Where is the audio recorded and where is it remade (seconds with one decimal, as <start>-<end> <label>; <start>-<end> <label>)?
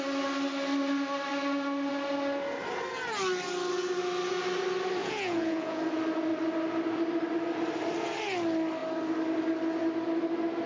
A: 0.0-5.0 recorded; 5.0-5.8 remade; 5.8-10.7 recorded